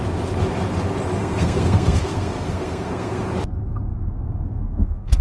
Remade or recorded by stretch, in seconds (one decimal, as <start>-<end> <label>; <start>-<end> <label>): 0.0-1.2 recorded; 1.2-3.2 remade; 3.2-3.9 recorded; 3.9-5.2 remade